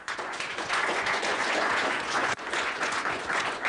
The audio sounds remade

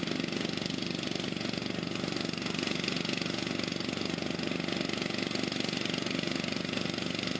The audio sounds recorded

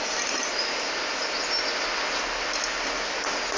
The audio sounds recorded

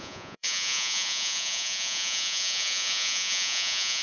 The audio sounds remade